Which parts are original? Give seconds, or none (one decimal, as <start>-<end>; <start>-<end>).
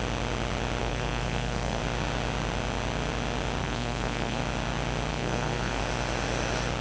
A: 0.0-0.8; 1.8-3.6; 4.4-5.1; 5.8-6.8